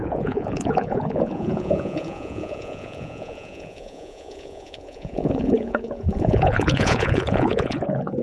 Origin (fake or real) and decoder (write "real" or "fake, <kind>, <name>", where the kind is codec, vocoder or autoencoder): fake, vocoder, Vocos